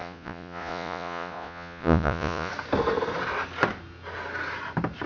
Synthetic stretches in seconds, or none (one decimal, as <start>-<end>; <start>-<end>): 0.0-2.5